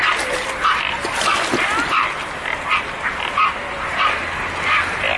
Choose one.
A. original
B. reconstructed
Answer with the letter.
A